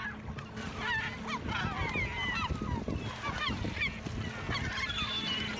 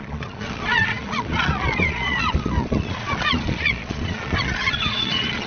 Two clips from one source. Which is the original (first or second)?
first